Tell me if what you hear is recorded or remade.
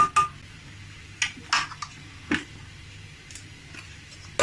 recorded